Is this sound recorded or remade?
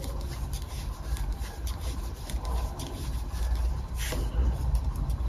recorded